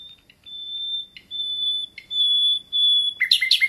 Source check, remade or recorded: recorded